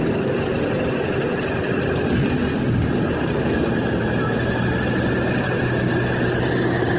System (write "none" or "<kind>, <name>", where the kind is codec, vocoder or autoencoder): none